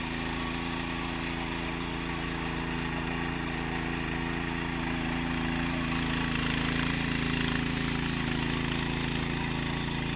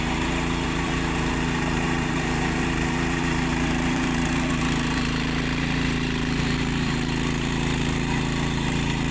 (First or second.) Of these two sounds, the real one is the first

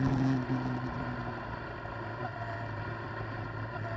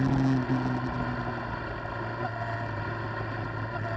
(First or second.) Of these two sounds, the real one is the second